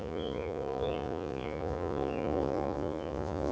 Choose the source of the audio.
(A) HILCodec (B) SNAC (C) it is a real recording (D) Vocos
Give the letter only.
D